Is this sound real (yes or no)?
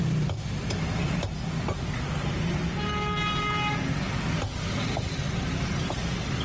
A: yes